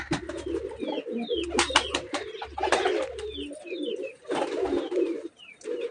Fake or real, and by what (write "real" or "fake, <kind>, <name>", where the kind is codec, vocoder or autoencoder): real